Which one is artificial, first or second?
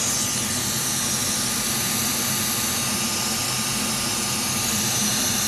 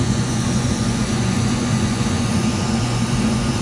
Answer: second